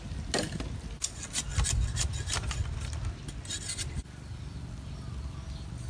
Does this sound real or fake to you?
real